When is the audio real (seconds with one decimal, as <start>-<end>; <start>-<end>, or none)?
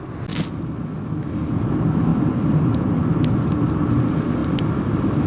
0.0-2.1; 2.8-4.4